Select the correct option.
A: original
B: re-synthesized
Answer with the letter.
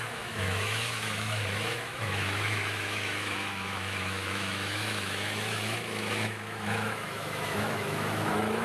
B